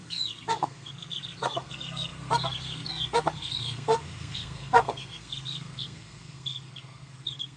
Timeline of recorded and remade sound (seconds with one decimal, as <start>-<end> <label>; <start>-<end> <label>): 0.0-7.6 remade